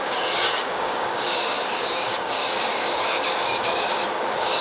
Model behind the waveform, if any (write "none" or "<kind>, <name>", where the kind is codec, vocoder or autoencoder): codec, DAC